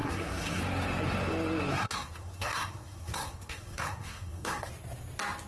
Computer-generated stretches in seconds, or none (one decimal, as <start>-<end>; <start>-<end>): 0.0-0.6; 1.7-4.7